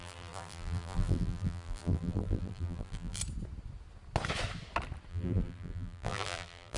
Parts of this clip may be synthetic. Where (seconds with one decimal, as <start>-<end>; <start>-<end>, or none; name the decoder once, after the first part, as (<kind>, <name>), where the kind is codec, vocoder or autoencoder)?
0.0-3.2 (vocoder, BigVGAN v2); 5.1-6.8